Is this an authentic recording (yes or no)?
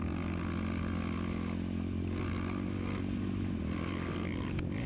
yes